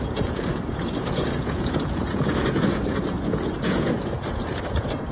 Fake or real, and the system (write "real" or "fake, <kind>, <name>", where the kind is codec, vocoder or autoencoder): fake, vocoder, Vocos